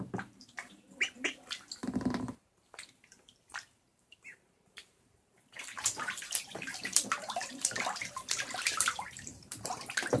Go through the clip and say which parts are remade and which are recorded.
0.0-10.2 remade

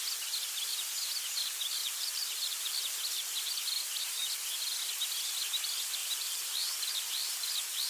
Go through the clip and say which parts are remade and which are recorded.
0.0-1.8 recorded; 1.8-2.7 remade; 2.7-6.0 recorded; 6.0-7.0 remade; 7.0-7.9 recorded

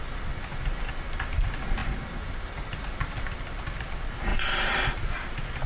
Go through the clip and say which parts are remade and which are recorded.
0.0-4.3 recorded; 4.3-5.7 remade

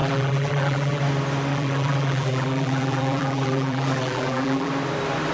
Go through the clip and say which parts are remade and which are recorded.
0.0-1.0 remade; 1.0-1.5 recorded; 1.5-4.7 remade; 4.7-5.3 recorded

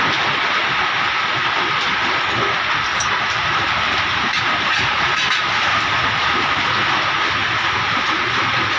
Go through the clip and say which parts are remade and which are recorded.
0.0-2.9 recorded; 2.9-5.8 remade; 5.8-7.4 recorded; 7.4-8.8 remade

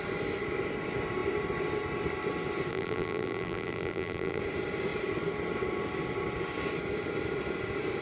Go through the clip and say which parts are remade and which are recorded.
0.0-2.7 recorded; 2.7-4.4 remade; 4.4-8.0 recorded

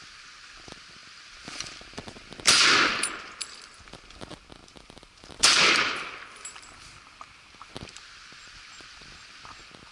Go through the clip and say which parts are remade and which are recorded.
0.0-9.9 remade